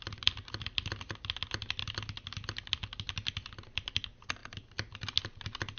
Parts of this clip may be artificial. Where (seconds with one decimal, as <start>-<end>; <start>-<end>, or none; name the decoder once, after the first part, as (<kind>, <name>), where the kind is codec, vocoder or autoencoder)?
none

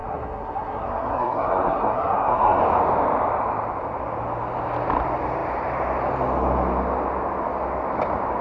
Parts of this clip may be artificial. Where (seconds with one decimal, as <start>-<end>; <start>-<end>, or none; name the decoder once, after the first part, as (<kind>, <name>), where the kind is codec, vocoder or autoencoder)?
0.0-2.6 (codec, SNAC)